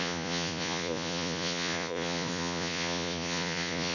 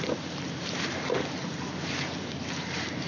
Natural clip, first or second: second